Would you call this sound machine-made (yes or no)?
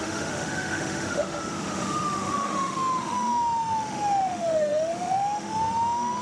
yes